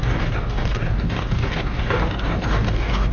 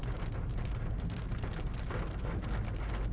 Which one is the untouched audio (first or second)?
second